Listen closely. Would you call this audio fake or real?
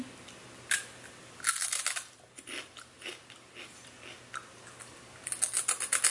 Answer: real